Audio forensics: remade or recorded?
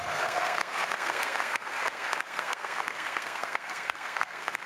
remade